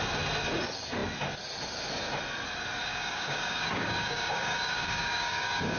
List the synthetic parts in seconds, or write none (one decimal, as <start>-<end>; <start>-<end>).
2.8-5.8